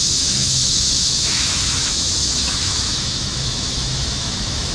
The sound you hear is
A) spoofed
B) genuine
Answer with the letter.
A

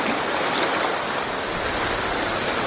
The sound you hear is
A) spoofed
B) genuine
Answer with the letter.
B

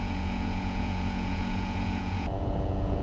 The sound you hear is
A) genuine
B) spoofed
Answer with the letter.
B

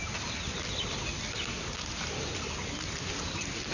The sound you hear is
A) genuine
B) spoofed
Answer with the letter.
A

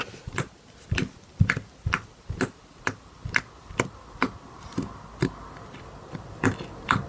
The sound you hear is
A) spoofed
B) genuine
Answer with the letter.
B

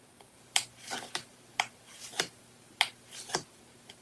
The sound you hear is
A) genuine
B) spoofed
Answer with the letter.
B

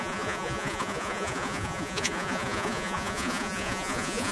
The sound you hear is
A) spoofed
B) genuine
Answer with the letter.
A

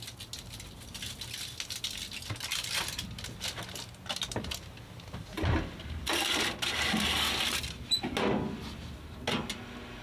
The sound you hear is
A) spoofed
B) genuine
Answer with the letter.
B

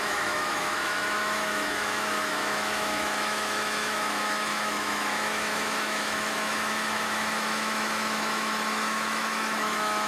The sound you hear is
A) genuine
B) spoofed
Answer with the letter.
B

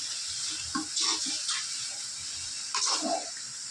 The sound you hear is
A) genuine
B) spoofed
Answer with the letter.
A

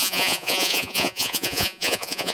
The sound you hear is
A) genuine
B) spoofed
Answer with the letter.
B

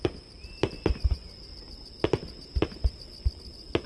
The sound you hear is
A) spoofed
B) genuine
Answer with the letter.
B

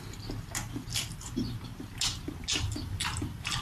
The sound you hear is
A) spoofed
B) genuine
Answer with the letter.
B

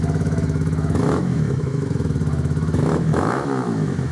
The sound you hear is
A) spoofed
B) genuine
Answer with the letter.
A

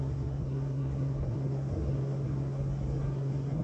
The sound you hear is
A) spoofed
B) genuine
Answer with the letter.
A